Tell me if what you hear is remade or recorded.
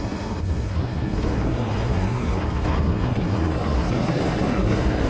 remade